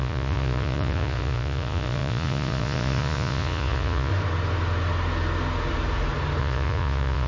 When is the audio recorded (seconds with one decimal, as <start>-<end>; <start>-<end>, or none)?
4.1-6.4